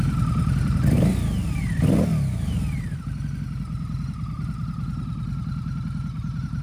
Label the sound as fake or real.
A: real